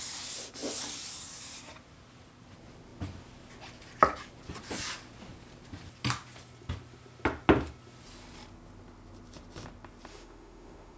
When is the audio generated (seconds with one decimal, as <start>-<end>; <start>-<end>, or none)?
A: 10.1-11.0